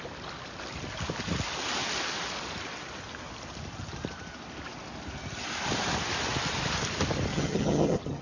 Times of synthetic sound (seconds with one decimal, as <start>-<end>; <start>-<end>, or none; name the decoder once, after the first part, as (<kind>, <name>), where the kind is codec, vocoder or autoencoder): 7.3-8.2 (vocoder, HiFi-GAN)